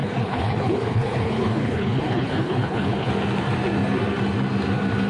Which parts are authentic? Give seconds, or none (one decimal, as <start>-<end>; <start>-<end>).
3.1-5.1